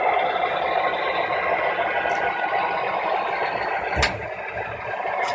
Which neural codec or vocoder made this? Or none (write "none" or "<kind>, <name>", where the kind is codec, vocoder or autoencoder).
none